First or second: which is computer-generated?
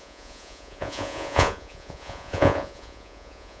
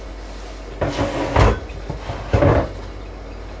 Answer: first